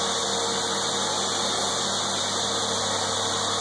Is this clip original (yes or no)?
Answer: yes